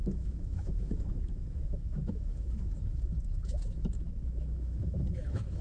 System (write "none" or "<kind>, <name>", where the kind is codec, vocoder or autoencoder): autoencoder, DAC-VAE